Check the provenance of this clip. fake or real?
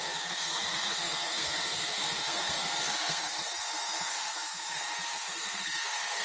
fake